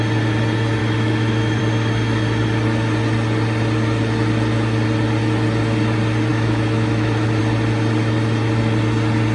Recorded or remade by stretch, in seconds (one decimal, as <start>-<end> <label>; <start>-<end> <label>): 0.0-0.8 recorded; 0.8-1.6 remade; 1.6-6.3 recorded; 6.3-7.4 remade; 7.4-9.3 recorded